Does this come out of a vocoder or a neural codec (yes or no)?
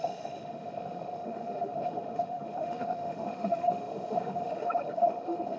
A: yes